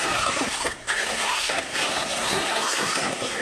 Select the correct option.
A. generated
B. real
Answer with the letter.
A